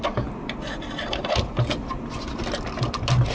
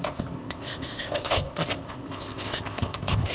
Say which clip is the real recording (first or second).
first